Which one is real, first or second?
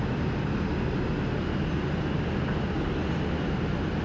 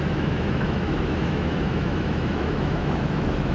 first